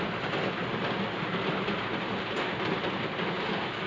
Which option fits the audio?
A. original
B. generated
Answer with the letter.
A